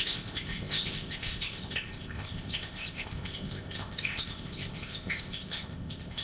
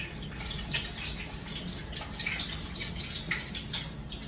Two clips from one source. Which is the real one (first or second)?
second